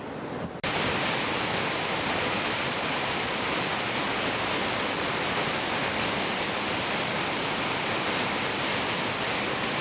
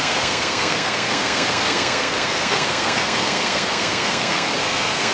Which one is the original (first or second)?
first